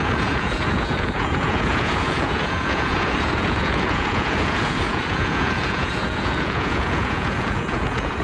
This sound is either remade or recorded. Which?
remade